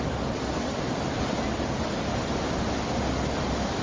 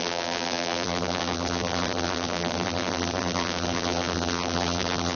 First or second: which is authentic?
first